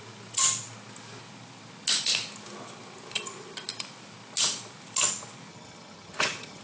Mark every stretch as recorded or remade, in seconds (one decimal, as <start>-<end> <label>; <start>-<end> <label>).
0.0-5.5 recorded; 5.5-6.6 remade

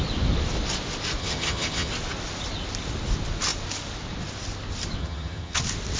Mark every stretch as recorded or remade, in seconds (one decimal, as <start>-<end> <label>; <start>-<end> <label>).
0.0-1.2 recorded; 1.2-1.9 remade; 1.9-5.0 recorded; 5.0-5.6 remade; 5.6-6.0 recorded

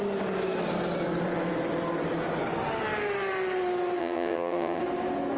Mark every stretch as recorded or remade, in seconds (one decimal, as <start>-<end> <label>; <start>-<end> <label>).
0.0-4.0 recorded; 4.0-4.8 remade; 4.8-5.4 recorded

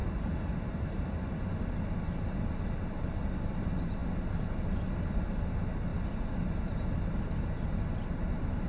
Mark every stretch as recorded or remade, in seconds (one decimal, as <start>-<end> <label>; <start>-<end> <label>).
0.0-8.7 recorded

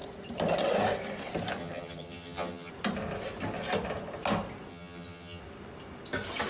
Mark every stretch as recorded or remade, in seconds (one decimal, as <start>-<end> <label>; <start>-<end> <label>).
0.0-1.6 recorded; 1.6-2.7 remade; 2.7-4.7 recorded; 4.7-5.4 remade; 5.4-6.5 recorded

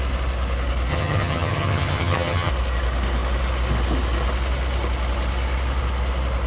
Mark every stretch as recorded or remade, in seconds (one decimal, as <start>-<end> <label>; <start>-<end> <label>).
0.0-0.9 recorded; 0.9-2.5 remade; 2.5-6.5 recorded